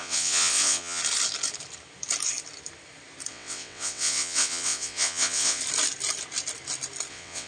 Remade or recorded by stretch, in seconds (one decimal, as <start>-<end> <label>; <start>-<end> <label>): 0.0-1.0 remade; 1.0-3.3 recorded; 3.3-5.6 remade; 5.6-7.1 recorded; 7.1-7.5 remade